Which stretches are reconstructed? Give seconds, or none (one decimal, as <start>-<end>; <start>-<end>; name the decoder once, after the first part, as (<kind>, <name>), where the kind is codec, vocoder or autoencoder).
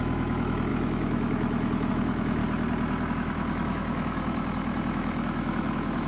0.0-2.4 (autoencoder, DAC-VAE); 3.1-6.1